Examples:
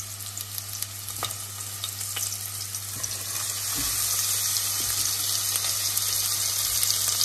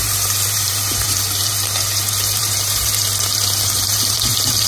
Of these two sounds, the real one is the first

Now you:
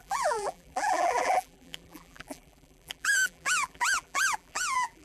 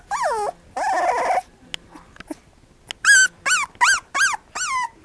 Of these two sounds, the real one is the second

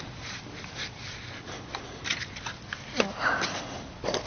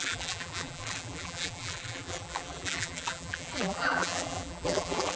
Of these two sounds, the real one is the first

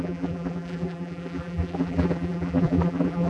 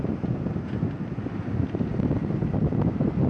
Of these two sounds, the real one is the second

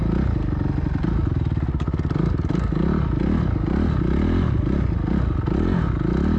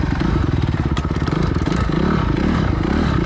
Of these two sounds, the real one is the first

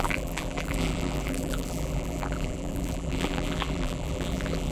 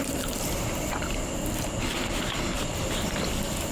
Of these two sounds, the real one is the second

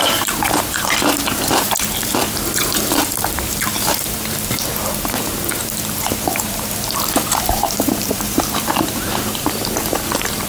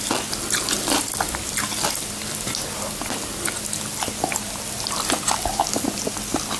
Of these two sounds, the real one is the second